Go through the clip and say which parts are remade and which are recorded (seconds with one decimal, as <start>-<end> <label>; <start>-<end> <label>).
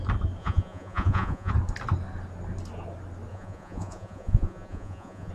0.0-0.4 recorded; 0.4-1.5 remade; 1.5-3.3 recorded; 3.3-5.3 remade